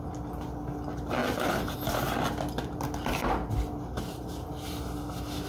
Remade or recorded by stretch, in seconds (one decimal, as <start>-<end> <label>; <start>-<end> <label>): 0.0-5.5 recorded